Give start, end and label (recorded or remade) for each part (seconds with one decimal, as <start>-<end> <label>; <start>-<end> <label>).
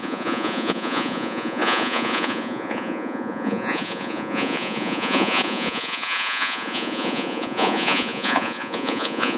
0.0-9.4 remade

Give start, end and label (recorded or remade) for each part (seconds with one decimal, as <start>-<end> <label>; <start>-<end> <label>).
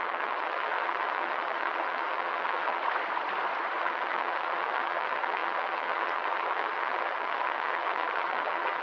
0.0-2.8 remade; 2.8-3.8 recorded; 3.8-8.8 remade